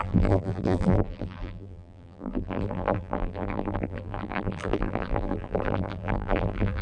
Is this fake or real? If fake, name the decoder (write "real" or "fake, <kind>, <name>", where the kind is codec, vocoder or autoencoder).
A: fake, vocoder, BigVGAN v2